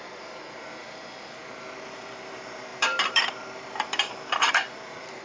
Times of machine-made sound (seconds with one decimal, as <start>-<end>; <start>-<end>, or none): 0.0-5.2